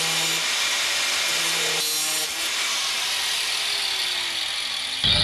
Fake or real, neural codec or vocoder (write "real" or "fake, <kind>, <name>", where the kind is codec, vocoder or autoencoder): real